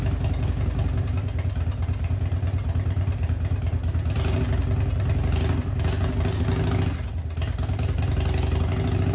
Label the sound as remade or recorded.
recorded